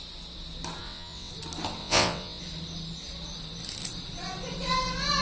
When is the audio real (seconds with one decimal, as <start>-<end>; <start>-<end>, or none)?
0.0-0.8; 1.3-1.8; 2.4-5.2